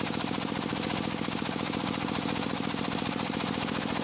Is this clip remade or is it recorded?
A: recorded